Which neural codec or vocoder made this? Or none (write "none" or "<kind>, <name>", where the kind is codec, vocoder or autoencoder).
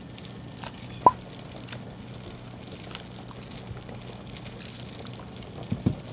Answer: none